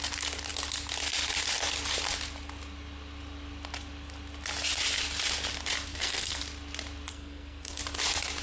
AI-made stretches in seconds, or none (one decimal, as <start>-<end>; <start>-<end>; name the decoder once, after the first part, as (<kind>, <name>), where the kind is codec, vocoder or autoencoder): 5.9-6.4 (codec, SNAC); 7.1-7.8

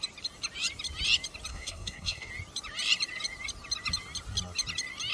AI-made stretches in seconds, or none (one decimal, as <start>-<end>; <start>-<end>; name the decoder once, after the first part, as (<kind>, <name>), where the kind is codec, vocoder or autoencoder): 1.5-2.3 (codec, SNAC)

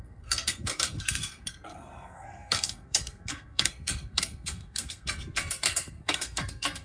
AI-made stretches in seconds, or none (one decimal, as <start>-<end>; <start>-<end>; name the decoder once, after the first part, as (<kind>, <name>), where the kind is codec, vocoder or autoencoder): 0.0-6.8 (codec, SNAC)

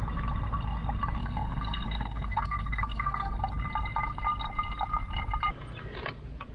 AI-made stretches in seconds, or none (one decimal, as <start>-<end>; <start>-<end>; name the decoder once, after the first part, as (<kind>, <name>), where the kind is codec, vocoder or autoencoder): 1.2-3.4 (codec, SNAC)

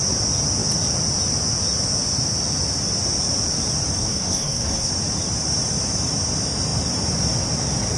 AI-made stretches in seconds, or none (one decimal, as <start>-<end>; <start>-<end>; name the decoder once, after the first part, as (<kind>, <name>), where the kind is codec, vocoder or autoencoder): 4.0-4.9 (codec, SNAC)

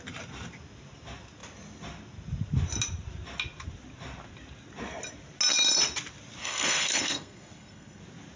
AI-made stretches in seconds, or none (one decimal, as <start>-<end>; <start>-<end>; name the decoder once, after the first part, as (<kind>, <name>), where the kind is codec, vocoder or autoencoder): 6.4-8.0 (codec, SNAC)

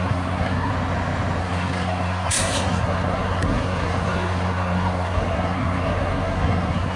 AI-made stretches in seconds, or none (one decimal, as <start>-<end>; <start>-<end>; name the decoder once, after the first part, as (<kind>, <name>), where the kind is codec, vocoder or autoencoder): 0.0-0.7 (codec, SNAC); 1.4-7.0

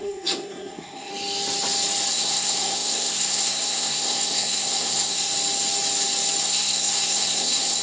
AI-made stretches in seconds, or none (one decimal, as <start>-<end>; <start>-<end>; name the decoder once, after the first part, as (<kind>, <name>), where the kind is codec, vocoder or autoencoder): 0.0-1.1 (codec, SNAC); 2.1-5.3; 6.4-7.8